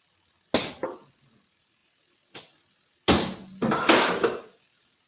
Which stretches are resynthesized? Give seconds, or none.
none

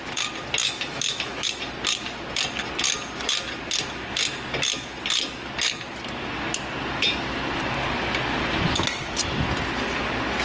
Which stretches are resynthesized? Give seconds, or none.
0.6-1.6 (autoencoder, DAC-VAE)